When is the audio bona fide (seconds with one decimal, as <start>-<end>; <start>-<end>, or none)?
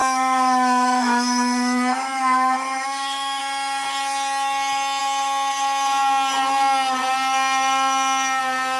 3.4-8.8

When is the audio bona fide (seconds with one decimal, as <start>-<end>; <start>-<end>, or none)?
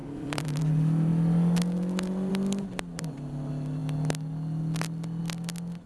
0.6-5.9